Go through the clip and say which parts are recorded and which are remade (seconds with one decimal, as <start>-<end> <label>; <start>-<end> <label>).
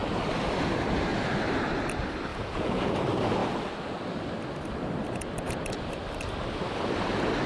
0.0-2.3 recorded; 2.3-3.0 remade; 3.0-7.5 recorded